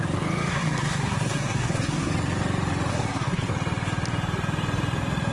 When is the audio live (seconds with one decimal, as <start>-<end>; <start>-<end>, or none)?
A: 0.0-0.5; 2.1-2.9; 3.5-5.3